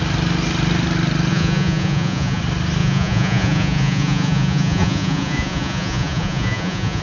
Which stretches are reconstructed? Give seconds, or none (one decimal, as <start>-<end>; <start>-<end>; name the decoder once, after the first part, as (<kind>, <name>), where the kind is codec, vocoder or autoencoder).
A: 1.3-2.4 (vocoder, Vocos); 2.8-7.0